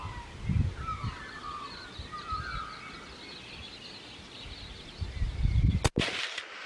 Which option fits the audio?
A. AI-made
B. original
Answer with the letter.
B